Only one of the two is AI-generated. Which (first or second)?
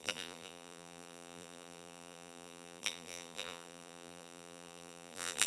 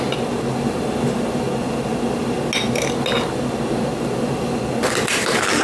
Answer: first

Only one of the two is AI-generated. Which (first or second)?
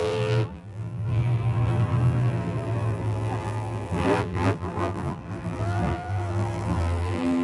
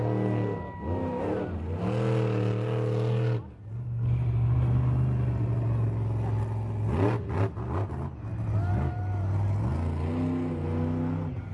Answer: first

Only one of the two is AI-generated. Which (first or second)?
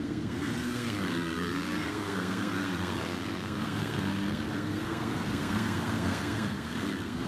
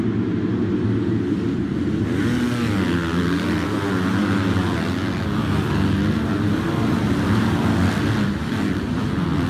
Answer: first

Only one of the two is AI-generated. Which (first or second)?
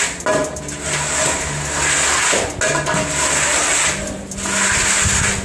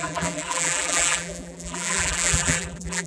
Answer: second